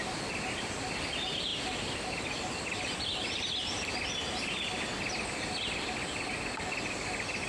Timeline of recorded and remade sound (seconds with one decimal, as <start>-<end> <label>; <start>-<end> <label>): 0.0-7.5 recorded

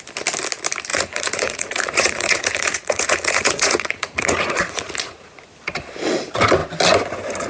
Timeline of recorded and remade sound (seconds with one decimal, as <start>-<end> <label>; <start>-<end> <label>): 0.0-0.9 recorded; 0.9-5.4 remade; 5.4-7.5 recorded

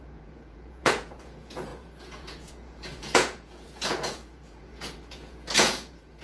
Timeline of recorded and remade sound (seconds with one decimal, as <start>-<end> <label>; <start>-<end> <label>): 0.0-6.2 remade

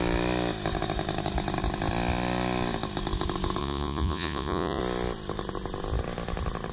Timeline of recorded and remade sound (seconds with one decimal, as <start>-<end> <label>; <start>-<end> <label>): 0.0-3.6 recorded; 3.6-4.8 remade; 4.8-6.7 recorded

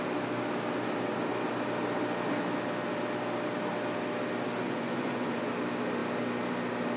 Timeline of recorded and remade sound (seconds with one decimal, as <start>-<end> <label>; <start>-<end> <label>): 0.0-4.6 recorded; 4.6-5.5 remade; 5.5-7.0 recorded

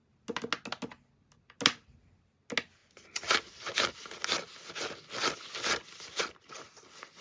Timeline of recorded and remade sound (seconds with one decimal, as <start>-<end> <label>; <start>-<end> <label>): 0.0-7.2 recorded